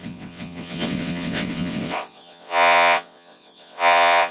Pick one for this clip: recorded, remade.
remade